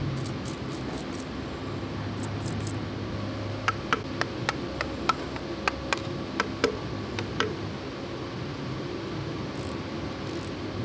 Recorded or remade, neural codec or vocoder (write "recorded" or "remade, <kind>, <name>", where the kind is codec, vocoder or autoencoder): recorded